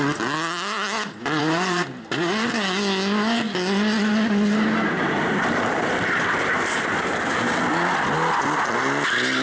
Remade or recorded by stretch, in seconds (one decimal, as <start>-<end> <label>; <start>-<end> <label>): 0.0-1.4 recorded; 1.4-2.0 remade; 2.0-9.4 recorded